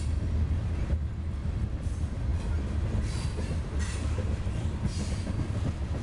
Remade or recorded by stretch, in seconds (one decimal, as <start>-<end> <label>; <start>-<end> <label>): 0.0-6.0 recorded